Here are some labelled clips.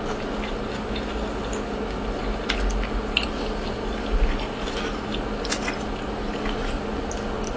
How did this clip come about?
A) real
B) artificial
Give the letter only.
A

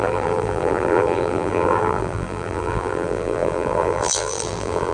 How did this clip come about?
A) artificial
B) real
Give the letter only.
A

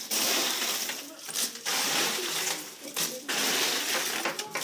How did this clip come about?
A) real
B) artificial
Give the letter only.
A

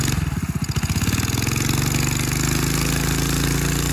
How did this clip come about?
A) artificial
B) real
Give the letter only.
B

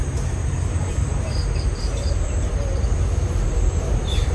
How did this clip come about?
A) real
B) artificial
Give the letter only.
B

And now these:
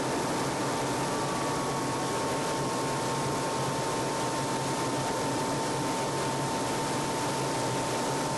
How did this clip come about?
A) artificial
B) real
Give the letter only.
B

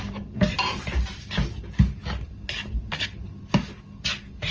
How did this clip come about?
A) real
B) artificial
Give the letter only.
A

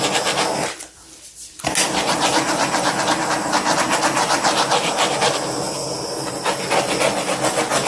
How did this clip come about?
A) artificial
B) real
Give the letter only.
B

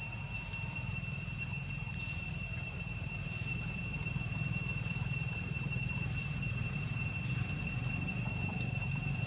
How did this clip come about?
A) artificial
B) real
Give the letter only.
A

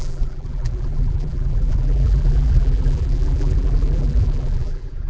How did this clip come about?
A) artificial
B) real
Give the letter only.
A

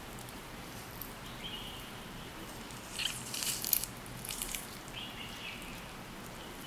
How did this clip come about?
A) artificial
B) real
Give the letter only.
A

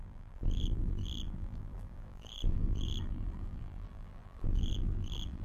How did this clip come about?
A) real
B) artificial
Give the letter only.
B